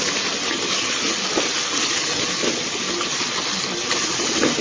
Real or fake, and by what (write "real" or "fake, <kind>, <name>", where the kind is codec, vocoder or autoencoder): real